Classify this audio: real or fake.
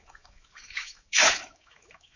fake